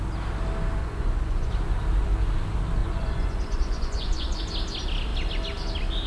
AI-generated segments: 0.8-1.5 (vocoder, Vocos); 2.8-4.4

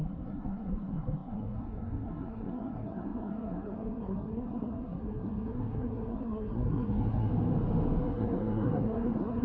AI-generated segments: 0.0-7.3 (codec, SNAC); 8.0-9.4

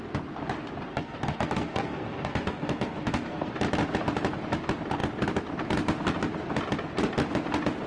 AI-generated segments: 0.9-3.5 (codec, SNAC)